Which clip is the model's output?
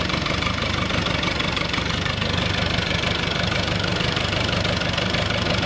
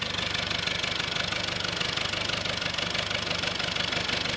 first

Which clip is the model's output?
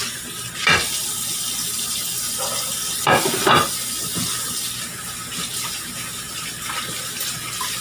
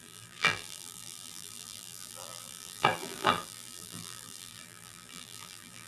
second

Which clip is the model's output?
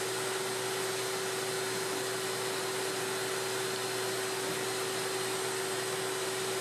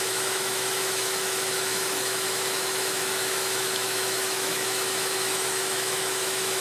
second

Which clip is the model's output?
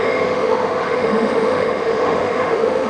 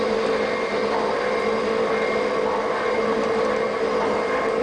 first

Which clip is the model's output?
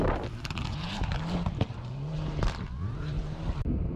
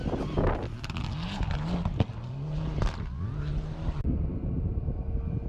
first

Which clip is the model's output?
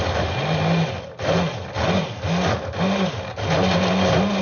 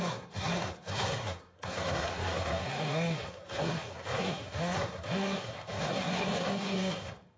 second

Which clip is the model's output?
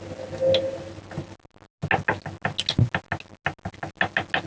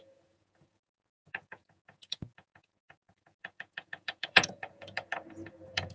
second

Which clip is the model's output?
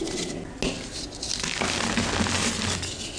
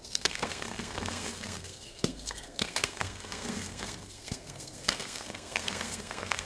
second